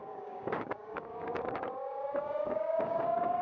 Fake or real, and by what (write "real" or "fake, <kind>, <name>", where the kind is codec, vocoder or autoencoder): fake, codec, DAC